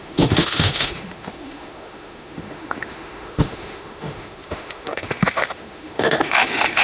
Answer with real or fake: fake